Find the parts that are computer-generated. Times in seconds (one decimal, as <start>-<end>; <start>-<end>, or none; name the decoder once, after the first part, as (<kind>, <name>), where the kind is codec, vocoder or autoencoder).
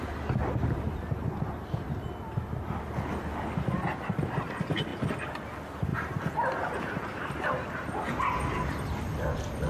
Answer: 5.9-8.1 (vocoder, BigVGAN v2)